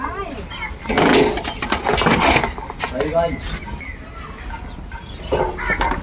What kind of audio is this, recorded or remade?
recorded